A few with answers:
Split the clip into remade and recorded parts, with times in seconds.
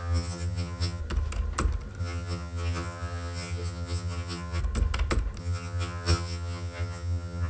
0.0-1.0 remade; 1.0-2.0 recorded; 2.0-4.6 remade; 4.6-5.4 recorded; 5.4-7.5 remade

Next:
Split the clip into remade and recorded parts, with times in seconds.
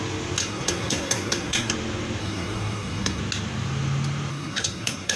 0.0-0.4 recorded; 0.4-1.7 remade; 1.7-2.2 recorded; 2.2-3.2 remade; 3.2-4.3 recorded; 4.3-5.2 remade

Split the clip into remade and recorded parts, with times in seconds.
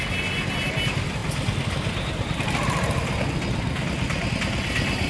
0.0-5.1 recorded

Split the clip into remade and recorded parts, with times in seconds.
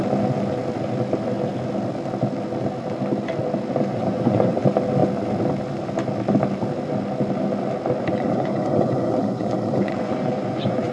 0.0-3.9 recorded; 3.9-4.6 remade; 4.6-8.1 recorded; 8.1-10.9 remade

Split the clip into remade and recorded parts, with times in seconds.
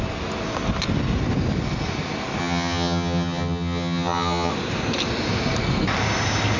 0.0-2.4 recorded; 2.4-4.5 remade; 4.5-6.6 recorded